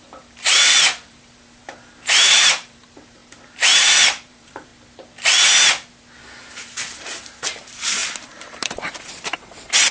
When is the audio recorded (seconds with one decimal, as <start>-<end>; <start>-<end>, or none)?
4.7-7.0